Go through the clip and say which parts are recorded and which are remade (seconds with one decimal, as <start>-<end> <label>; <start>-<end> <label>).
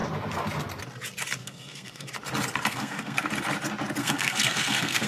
0.0-1.4 recorded; 1.4-2.1 remade; 2.1-2.7 recorded; 2.7-3.3 remade; 3.3-4.0 recorded; 4.0-5.1 remade